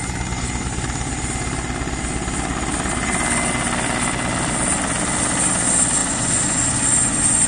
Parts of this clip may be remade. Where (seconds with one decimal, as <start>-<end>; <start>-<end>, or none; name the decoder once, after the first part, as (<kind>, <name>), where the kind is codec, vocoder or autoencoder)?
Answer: 6.0-7.5 (vocoder, Vocos)